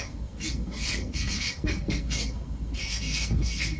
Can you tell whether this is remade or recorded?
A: remade